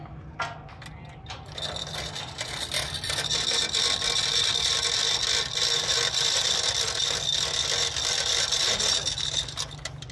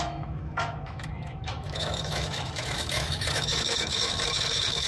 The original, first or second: first